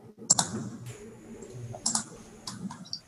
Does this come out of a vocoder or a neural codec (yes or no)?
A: no